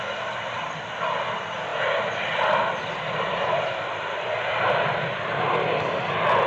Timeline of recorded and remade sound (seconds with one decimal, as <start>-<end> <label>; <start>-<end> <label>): 0.0-6.5 recorded